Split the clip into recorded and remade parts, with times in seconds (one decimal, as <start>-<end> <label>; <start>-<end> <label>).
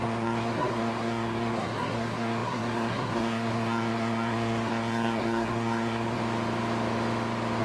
0.0-6.2 remade; 6.2-7.6 recorded